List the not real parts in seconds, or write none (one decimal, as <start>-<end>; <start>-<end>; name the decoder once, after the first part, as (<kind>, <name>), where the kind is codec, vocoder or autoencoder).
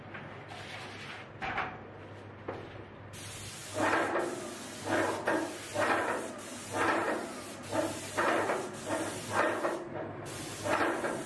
none